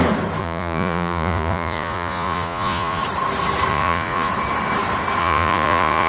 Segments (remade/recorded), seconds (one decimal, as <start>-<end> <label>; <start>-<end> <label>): 0.0-0.4 recorded; 0.4-3.0 remade; 3.0-3.7 recorded; 3.7-4.3 remade; 4.3-5.2 recorded; 5.2-6.1 remade